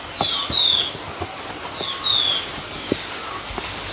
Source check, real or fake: real